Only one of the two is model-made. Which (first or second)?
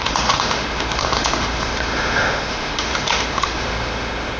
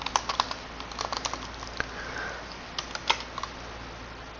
first